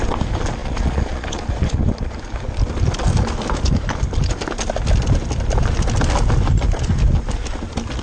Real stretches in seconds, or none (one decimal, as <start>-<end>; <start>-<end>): 0.0-0.6; 1.8-8.0